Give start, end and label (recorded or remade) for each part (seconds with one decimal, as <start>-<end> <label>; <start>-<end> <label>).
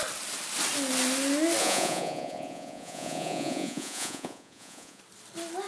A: 0.0-1.6 recorded; 1.6-5.0 remade; 5.0-5.7 recorded